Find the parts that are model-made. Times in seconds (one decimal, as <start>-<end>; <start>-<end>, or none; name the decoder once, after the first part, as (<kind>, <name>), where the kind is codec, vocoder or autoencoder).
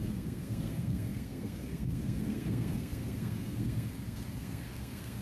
0.0-5.2 (codec, SNAC)